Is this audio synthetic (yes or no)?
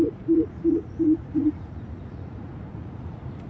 yes